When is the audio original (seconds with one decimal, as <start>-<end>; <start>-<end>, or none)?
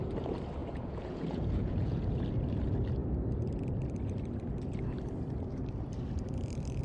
0.0-0.6; 2.2-6.8